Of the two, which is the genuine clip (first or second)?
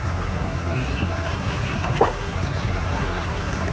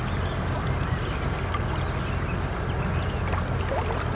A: second